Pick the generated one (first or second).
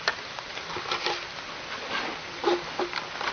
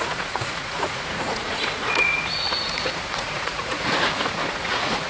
second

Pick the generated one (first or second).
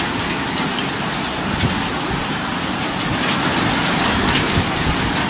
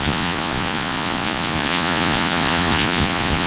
second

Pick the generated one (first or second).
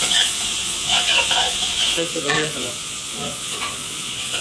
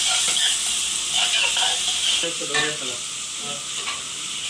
first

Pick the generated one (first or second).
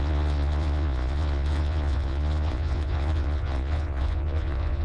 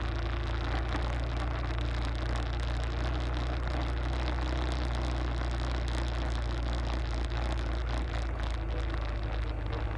first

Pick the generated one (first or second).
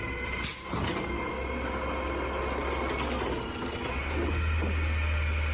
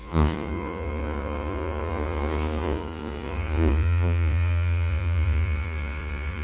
second